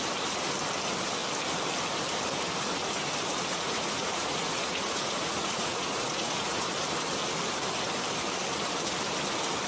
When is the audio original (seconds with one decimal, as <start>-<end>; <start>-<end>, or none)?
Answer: 0.0-3.5; 6.6-9.7